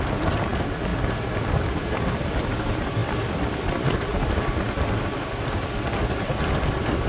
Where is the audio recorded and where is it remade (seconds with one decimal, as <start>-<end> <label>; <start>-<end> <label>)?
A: 0.0-7.1 recorded